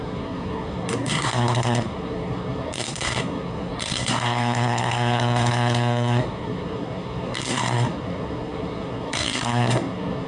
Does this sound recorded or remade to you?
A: remade